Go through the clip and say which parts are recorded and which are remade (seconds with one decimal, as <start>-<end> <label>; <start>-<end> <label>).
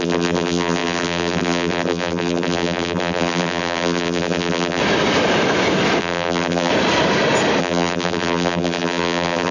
0.0-4.8 remade; 4.8-6.0 recorded; 6.0-6.7 remade; 6.7-7.6 recorded; 7.6-9.5 remade